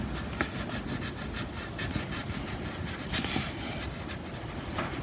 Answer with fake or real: real